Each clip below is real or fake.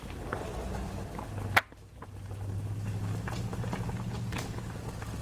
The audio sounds real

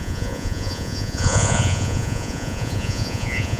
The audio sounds fake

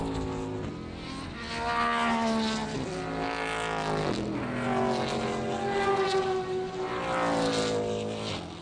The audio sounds real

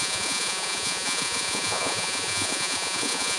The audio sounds fake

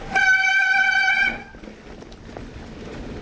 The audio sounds real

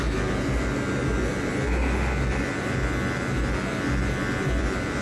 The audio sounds real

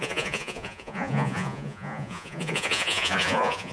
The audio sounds fake